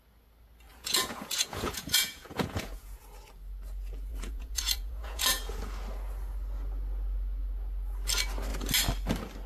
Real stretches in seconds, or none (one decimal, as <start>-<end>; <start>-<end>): 0.0-0.7; 3.0-4.1; 5.6-9.5